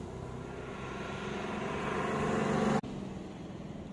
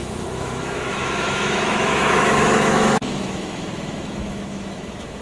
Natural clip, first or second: first